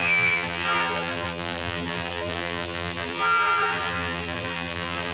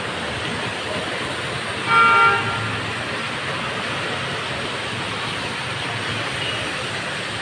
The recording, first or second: second